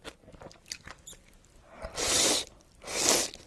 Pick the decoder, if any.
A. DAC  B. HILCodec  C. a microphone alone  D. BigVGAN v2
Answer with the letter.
D